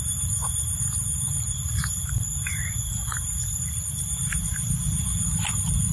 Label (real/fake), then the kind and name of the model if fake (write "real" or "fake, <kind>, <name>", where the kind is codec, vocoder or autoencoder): fake, vocoder, BigVGAN v2